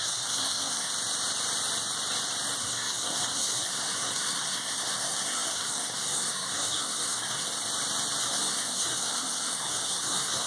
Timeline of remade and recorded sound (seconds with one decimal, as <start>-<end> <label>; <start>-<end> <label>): 0.0-0.9 remade; 0.9-2.6 recorded; 2.6-7.5 remade; 7.5-8.2 recorded; 8.2-10.5 remade